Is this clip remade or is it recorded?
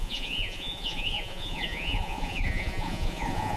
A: remade